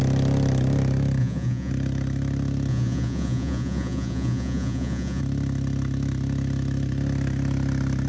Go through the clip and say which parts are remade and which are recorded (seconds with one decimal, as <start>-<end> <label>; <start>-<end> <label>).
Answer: 0.0-1.2 recorded; 1.2-1.7 remade; 1.7-2.7 recorded; 2.7-5.2 remade; 5.2-8.1 recorded